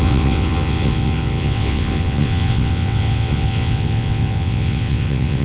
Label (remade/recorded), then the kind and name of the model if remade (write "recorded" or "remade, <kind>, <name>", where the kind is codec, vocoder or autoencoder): remade, vocoder, WaveNeXt